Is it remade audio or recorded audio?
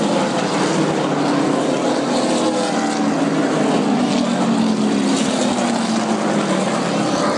recorded